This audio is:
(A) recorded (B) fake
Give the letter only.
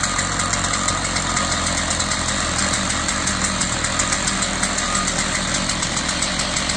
A